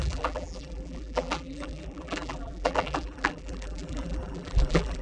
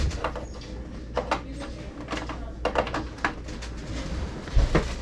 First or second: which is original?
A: second